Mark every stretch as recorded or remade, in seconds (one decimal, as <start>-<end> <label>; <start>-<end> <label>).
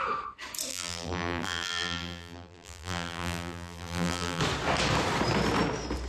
0.0-0.7 recorded; 0.7-4.4 remade; 4.4-6.1 recorded